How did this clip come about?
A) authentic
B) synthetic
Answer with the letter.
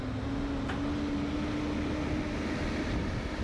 A